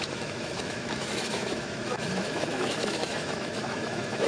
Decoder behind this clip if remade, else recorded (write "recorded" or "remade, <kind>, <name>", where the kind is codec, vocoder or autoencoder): remade, autoencoder, DAC-VAE